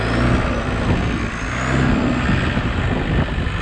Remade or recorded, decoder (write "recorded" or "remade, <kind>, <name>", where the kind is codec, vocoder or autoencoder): recorded